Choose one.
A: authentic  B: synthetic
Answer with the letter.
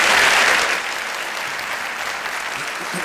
A